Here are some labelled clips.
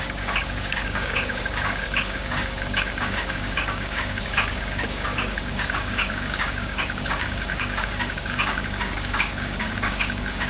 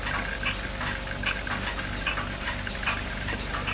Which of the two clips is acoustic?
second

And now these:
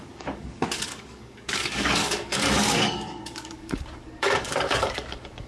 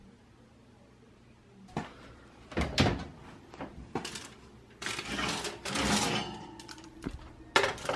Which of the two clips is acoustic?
second